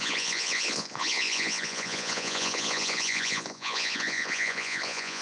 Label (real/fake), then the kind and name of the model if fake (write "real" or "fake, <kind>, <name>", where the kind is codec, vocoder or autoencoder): fake, vocoder, Vocos